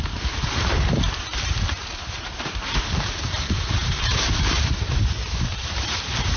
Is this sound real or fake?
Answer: fake